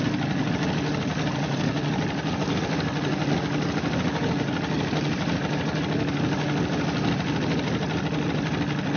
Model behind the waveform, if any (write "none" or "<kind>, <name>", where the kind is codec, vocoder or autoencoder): none